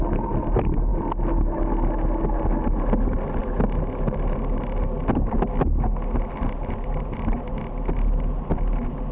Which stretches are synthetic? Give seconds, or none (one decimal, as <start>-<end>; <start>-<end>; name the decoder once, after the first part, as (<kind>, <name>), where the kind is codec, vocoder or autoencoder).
none